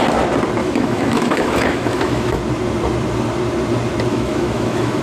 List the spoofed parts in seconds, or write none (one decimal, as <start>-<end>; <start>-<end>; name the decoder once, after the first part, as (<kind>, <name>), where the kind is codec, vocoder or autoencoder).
0.6-2.4 (autoencoder, DAC-VAE); 4.1-5.0